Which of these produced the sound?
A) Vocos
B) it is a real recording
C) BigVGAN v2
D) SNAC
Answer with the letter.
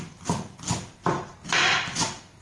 B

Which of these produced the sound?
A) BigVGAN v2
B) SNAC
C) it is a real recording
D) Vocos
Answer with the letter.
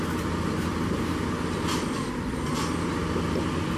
C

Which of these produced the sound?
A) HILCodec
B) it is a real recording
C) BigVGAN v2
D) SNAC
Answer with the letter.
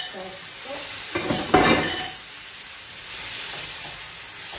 B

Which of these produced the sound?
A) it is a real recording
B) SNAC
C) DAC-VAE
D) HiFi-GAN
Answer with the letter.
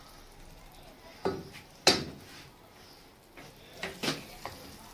A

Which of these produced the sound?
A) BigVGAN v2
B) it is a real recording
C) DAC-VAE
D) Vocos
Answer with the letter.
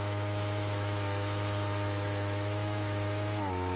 C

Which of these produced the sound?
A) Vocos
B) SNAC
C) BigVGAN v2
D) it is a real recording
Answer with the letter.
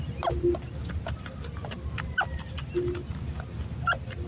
D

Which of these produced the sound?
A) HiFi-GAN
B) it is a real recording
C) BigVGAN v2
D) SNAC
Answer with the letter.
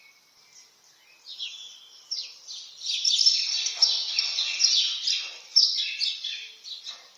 B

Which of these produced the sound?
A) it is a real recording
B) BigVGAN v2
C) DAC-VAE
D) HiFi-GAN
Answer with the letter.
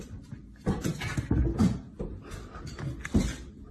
A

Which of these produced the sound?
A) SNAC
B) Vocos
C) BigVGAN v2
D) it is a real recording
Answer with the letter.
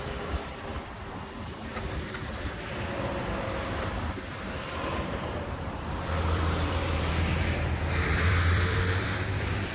C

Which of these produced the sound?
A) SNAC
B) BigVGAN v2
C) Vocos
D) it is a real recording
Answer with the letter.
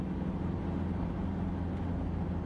D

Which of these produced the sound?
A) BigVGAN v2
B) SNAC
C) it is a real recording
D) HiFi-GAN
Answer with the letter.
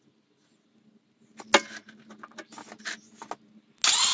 C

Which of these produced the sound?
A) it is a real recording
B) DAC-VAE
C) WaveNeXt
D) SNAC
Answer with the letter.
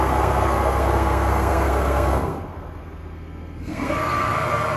D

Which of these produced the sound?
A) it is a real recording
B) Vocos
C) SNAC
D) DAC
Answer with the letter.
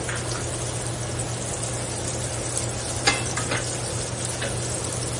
A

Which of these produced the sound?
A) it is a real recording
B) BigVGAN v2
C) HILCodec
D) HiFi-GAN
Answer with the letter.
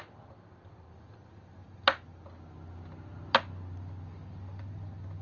A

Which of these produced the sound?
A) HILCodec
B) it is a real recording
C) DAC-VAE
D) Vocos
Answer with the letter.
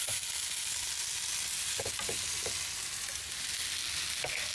B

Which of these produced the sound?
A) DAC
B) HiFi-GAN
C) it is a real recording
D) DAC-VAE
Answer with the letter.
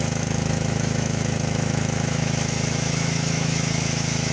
D